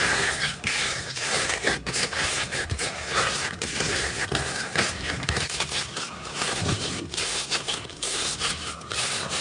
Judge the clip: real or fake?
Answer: fake